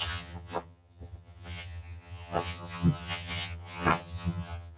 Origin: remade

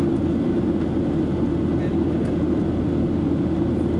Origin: recorded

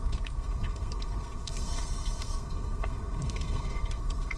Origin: remade